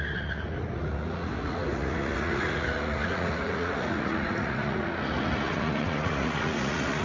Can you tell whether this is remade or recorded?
remade